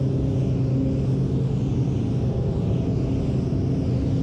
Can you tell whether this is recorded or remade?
recorded